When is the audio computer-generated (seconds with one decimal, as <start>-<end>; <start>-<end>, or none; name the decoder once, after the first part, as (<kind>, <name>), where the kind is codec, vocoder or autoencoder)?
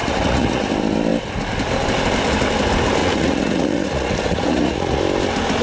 0.0-0.7 (vocoder, Vocos); 3.0-5.0